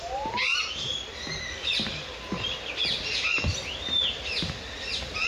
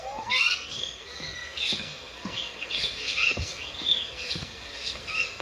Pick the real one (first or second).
first